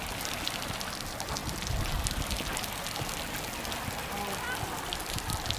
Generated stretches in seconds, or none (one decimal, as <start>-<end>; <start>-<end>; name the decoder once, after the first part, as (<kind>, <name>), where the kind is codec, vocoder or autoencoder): 0.0-1.4 (vocoder, BigVGAN v2); 4.8-5.6